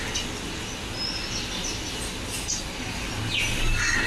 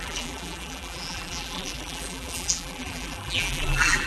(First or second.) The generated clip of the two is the second